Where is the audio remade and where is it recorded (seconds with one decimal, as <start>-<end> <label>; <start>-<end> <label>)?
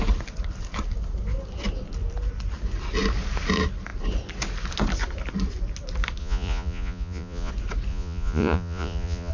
0.0-6.2 recorded; 6.2-7.5 remade; 7.5-7.9 recorded; 7.9-9.3 remade